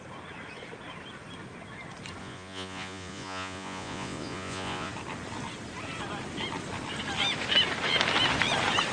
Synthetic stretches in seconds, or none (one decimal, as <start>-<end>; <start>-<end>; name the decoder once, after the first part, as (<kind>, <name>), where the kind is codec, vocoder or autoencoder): 2.2-4.9 (vocoder, Vocos)